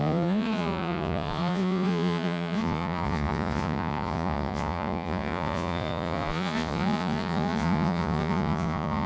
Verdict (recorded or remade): remade